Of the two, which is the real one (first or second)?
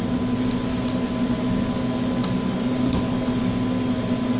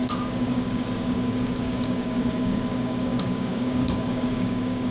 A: first